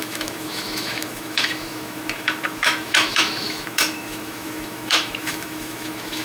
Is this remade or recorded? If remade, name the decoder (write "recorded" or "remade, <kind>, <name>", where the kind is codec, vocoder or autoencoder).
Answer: remade, autoencoder, DAC-VAE